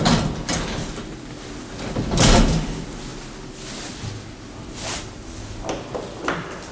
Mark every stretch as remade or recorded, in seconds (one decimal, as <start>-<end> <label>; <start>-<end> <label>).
0.0-6.7 recorded